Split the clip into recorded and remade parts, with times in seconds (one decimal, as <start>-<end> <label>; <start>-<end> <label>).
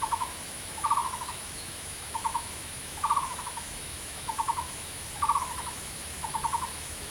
0.0-7.1 remade